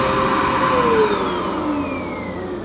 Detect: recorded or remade recorded